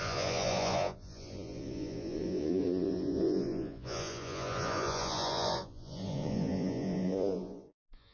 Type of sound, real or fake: fake